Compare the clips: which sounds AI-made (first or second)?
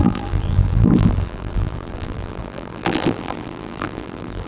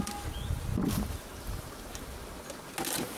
first